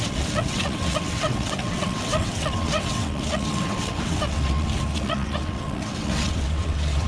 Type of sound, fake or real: fake